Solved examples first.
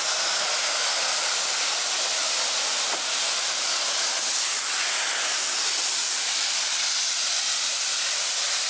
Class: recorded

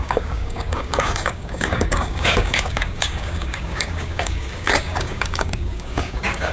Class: remade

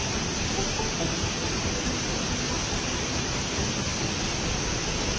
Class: recorded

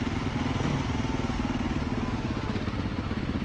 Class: recorded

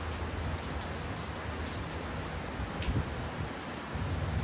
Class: recorded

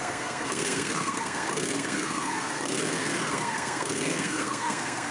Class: remade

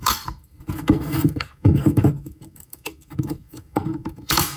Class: remade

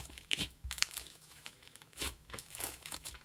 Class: remade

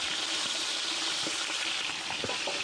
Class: recorded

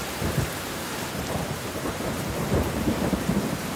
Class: remade